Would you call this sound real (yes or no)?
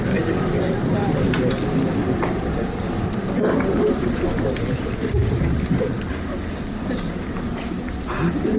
yes